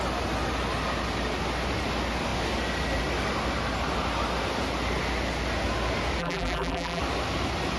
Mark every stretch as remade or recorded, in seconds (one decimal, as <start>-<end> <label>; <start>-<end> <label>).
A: 0.0-6.2 recorded; 6.2-7.0 remade; 7.0-7.8 recorded